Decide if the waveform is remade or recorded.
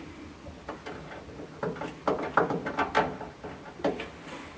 recorded